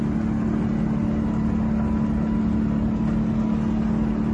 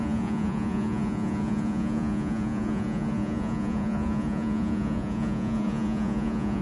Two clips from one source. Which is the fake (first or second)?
second